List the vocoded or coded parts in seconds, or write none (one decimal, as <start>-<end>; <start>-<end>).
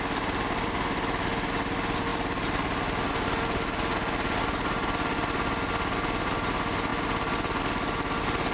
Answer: none